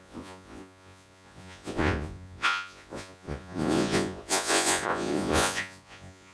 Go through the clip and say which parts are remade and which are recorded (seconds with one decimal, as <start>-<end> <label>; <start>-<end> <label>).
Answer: 0.0-6.3 remade